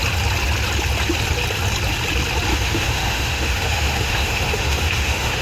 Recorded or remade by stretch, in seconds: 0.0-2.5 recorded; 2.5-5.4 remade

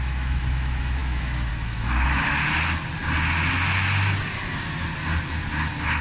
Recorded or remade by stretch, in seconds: 0.0-2.4 remade; 2.4-6.0 recorded

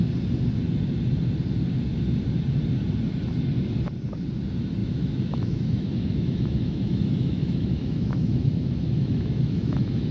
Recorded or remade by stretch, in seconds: 0.0-4.8 recorded; 4.8-10.1 remade